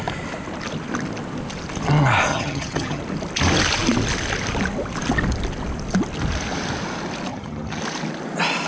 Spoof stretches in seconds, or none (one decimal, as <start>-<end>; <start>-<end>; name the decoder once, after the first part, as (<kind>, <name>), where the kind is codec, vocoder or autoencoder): 2.3-3.0 (vocoder, HiFi-GAN); 7.3-7.8